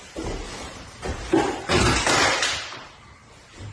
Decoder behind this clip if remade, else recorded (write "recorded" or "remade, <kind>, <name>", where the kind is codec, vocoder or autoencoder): remade, vocoder, BigVGAN v2